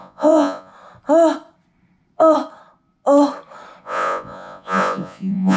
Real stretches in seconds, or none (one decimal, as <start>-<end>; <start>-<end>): 0.7-3.8